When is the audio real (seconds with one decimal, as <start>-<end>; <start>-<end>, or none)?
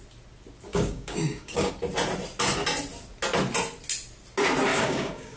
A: 0.0-0.7; 1.7-4.7